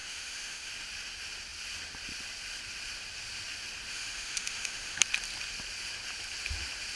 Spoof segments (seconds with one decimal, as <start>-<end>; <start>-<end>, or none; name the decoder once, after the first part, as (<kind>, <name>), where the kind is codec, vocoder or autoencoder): 0.0-0.7 (autoencoder, DAC-VAE); 3.9-5.0